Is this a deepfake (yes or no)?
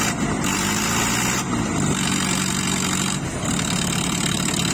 no